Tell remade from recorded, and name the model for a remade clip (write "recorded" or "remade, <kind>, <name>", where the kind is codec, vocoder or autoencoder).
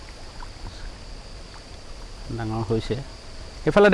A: recorded